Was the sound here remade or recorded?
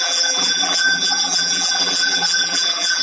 remade